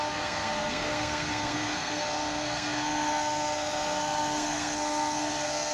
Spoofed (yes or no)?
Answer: yes